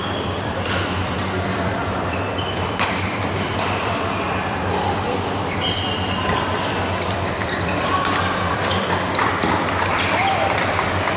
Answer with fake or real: fake